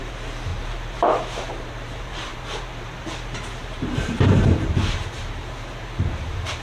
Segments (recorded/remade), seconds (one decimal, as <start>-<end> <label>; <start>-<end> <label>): 0.0-6.6 remade